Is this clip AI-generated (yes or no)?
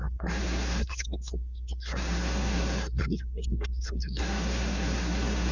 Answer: yes